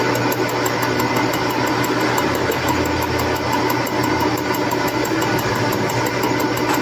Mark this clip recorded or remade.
recorded